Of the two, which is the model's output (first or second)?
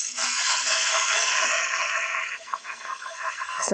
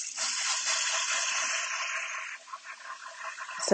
first